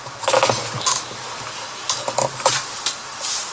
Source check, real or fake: real